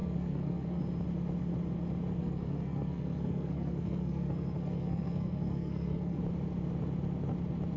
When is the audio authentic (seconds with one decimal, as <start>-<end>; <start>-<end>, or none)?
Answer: 0.8-2.2; 6.2-7.8